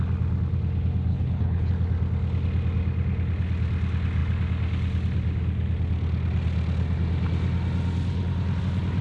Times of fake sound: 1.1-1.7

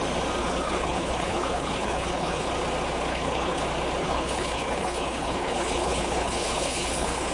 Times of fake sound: 0.4-2.5; 3.1-3.6; 4.0-7.3